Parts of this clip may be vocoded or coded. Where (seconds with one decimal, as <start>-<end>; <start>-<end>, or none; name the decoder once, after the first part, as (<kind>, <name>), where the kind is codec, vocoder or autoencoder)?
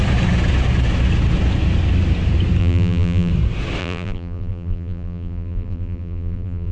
2.6-3.3 (vocoder, BigVGAN v2); 3.8-6.7